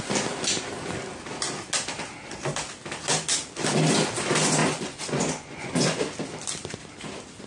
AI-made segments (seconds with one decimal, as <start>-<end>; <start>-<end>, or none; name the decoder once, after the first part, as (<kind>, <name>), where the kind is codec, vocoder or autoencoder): 4.6-6.0 (vocoder, Vocos)

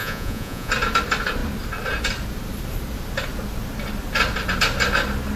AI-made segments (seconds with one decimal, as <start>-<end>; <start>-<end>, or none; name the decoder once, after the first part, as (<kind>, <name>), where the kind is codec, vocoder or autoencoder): 0.0-0.7 (vocoder, Vocos)

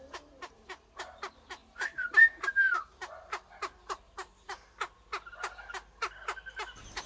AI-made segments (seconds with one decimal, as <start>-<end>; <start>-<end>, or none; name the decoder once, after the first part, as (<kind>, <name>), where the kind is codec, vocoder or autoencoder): none

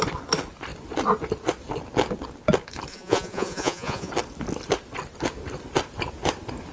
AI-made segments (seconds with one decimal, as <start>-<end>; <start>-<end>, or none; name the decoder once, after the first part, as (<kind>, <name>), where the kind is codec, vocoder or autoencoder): 2.9-4.1 (vocoder, Vocos)